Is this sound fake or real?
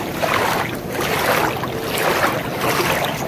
real